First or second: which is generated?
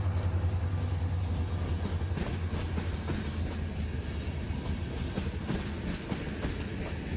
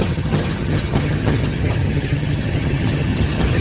second